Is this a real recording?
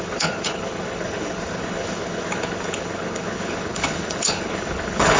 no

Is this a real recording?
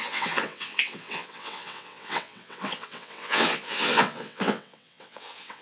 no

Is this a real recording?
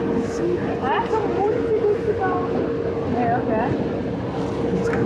yes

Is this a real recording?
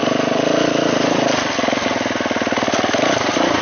yes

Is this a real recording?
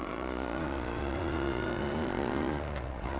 no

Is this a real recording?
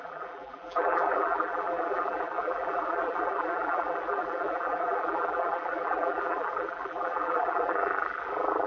no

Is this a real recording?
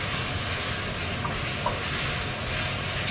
yes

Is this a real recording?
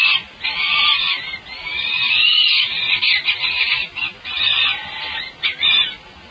no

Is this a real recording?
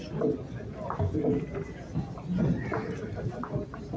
yes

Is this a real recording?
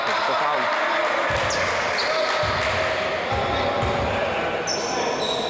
yes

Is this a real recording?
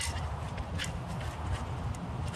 yes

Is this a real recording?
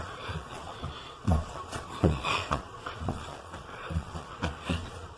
no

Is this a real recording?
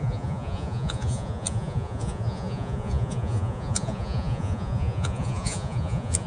no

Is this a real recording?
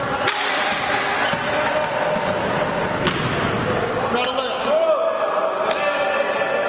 yes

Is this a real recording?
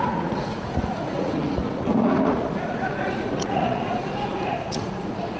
no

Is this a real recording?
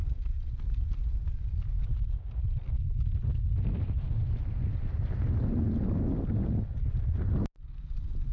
yes